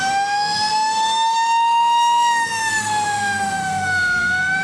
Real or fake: fake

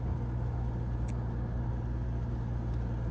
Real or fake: real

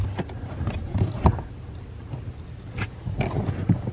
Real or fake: real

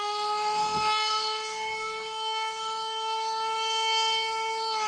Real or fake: fake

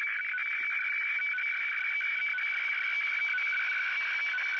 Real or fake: real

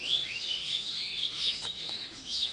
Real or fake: fake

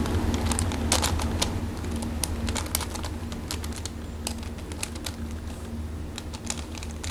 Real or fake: real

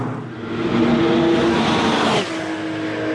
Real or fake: real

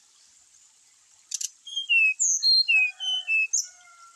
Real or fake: real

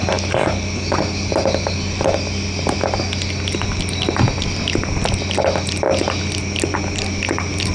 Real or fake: real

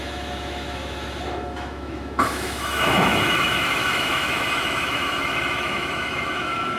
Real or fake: fake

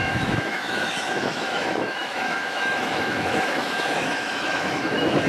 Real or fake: fake